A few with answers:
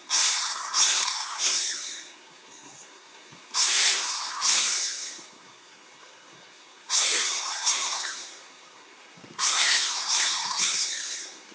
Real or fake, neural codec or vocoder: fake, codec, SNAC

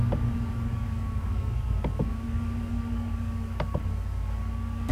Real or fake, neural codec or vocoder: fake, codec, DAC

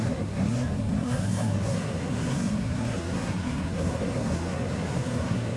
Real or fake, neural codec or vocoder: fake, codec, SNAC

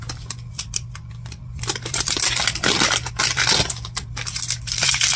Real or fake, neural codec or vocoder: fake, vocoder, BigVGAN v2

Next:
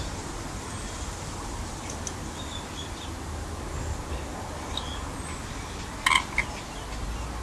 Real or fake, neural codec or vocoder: real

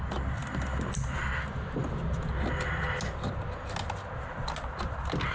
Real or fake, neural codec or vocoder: real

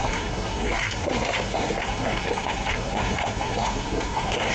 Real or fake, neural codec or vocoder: fake, codec, SNAC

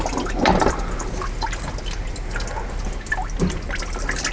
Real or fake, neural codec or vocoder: real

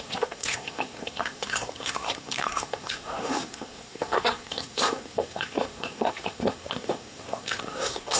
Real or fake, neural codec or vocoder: fake, codec, SNAC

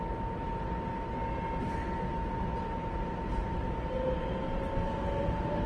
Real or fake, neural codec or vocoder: real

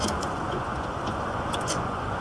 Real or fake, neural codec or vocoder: fake, vocoder, Vocos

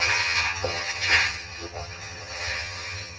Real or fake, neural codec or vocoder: fake, vocoder, HiFi-GAN